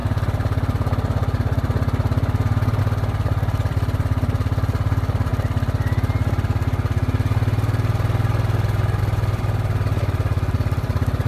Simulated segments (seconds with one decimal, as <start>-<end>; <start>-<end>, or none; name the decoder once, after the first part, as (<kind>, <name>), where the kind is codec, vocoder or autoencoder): 2.8-5.3 (vocoder, BigVGAN v2); 9.0-11.3